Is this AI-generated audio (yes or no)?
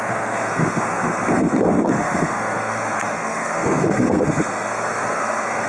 yes